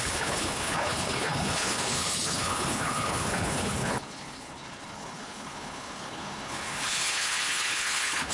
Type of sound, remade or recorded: remade